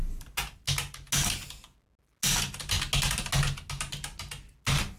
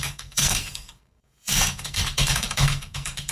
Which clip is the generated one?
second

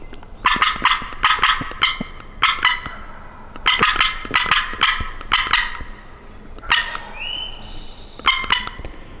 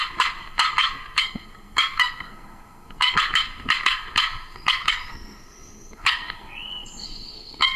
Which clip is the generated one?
second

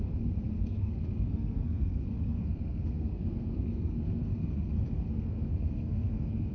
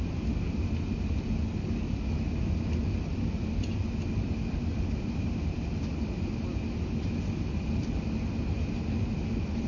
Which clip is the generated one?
first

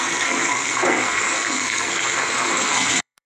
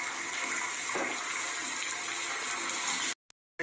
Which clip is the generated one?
first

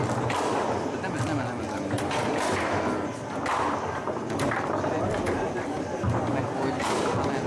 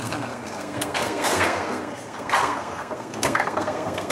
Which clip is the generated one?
second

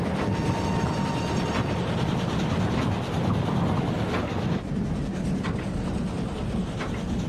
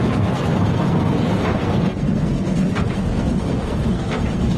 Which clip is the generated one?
second